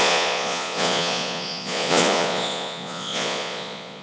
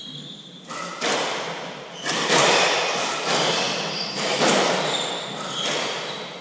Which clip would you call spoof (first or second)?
first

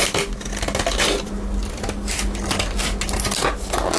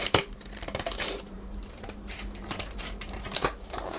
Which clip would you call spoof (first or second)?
second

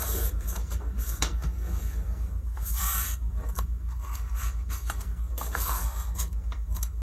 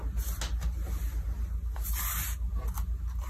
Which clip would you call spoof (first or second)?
first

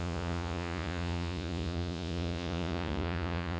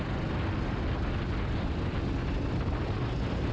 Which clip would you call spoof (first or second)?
first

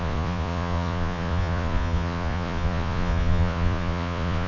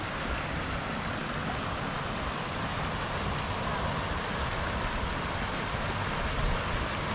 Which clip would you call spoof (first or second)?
first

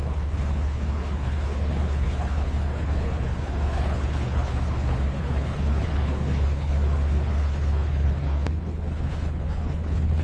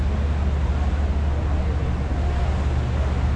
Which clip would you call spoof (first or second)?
first